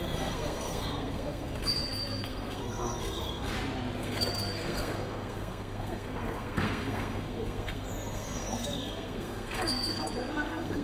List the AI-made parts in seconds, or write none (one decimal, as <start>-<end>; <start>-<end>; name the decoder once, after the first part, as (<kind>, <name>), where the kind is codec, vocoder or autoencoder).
0.0-3.5 (codec, SNAC); 4.0-10.8